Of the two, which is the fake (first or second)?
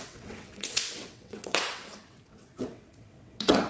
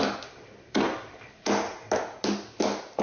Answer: first